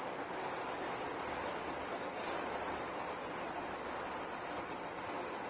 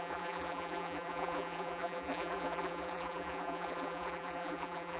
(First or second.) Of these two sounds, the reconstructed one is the second